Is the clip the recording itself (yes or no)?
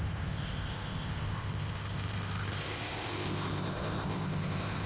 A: no